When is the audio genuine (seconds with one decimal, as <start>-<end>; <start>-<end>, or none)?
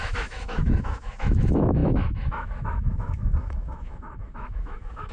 none